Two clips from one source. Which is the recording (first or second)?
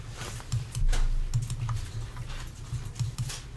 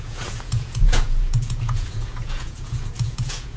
first